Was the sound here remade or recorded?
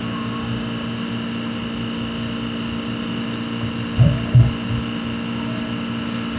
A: recorded